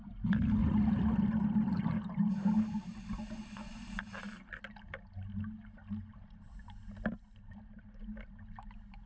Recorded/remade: recorded